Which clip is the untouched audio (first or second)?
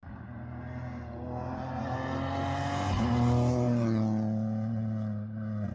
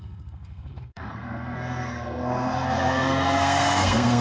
first